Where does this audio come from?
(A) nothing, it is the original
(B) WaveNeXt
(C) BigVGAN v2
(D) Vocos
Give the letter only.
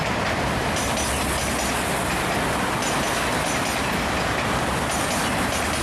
A